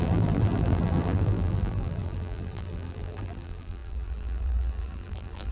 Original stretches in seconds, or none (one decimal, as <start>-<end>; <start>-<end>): none